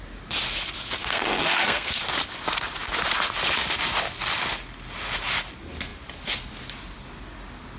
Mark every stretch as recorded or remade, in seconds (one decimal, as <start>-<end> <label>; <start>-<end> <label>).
0.0-1.0 recorded; 1.0-2.0 remade; 2.0-7.8 recorded